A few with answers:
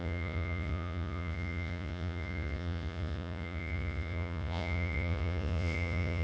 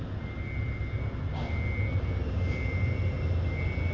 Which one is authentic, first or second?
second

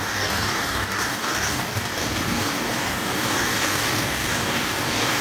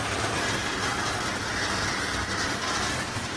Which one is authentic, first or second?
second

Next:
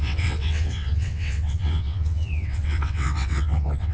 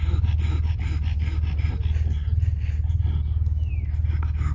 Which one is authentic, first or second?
second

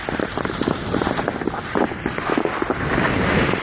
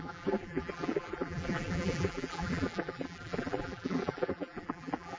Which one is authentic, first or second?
first